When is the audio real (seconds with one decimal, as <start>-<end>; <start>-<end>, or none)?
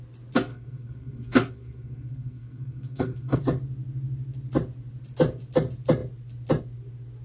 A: 0.0-0.5; 3.4-7.2